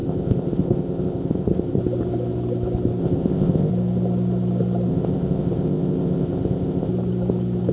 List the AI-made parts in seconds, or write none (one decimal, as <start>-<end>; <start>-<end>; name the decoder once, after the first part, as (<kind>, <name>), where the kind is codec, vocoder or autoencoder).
0.0-1.8 (codec, ZipCodec); 3.0-3.7; 4.9-6.9